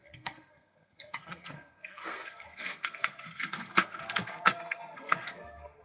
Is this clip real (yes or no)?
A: no